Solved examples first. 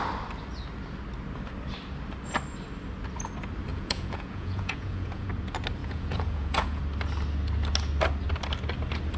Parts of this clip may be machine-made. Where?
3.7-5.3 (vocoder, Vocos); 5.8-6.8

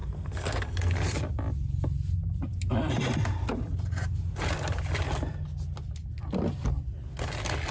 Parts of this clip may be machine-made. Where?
0.0-0.9 (codec, SNAC)